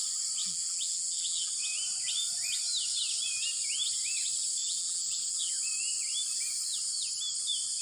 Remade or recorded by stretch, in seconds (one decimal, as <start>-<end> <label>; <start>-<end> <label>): 0.0-0.4 recorded; 0.4-1.5 remade; 1.5-4.6 recorded; 4.6-5.5 remade; 5.5-7.8 recorded